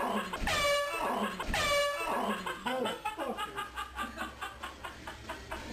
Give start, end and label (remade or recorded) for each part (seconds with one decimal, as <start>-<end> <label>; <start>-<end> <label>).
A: 0.0-2.6 recorded; 2.6-3.1 remade; 3.1-5.7 recorded

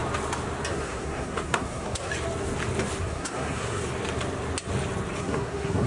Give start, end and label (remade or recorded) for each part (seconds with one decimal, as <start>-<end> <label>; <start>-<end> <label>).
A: 0.0-0.7 recorded; 0.7-2.1 remade; 2.1-3.0 recorded; 3.0-3.8 remade; 3.8-5.2 recorded; 5.2-5.9 remade

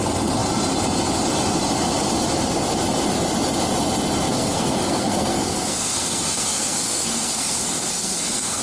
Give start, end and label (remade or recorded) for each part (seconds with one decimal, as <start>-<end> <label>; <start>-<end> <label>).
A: 0.0-4.3 recorded; 4.3-8.6 remade

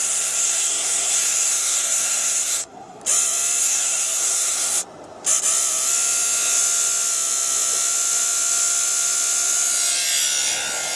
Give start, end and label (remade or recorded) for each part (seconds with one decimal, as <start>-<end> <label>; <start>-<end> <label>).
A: 0.0-3.0 remade; 3.0-3.6 recorded; 3.6-4.8 remade; 4.8-11.0 recorded

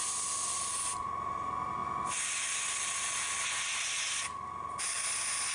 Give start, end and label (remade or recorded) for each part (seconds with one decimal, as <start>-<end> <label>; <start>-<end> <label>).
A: 0.0-5.5 recorded

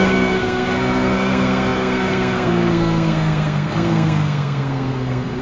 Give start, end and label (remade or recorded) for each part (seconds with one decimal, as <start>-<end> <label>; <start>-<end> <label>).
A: 0.0-5.4 remade

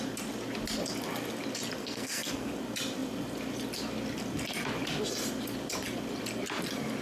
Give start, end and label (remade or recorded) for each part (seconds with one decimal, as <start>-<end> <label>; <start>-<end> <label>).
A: 0.0-1.8 recorded; 1.8-2.5 remade; 2.5-7.0 recorded

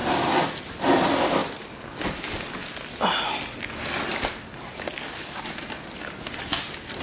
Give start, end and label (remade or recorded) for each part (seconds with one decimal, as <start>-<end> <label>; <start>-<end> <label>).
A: 0.0-7.0 recorded